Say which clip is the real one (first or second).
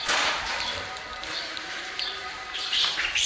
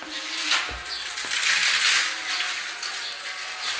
second